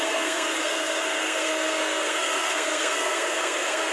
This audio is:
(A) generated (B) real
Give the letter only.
A